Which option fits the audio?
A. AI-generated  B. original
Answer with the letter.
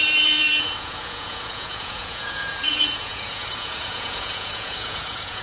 A